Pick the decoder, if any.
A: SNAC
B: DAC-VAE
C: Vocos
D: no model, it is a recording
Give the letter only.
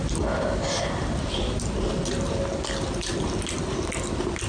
D